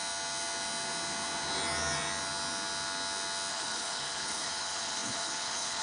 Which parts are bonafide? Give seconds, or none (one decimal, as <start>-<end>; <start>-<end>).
0.0-3.5